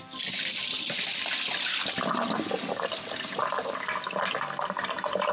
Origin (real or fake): real